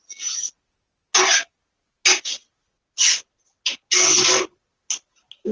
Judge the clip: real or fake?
real